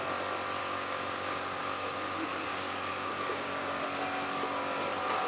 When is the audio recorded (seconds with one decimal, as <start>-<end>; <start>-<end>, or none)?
0.0-0.6; 3.8-5.3